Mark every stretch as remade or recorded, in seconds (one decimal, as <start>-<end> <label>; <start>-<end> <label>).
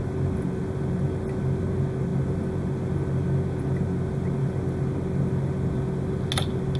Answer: 0.0-6.8 recorded